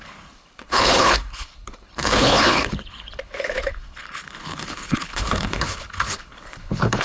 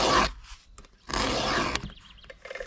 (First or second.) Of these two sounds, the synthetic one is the first